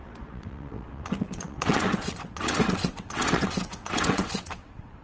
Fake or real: fake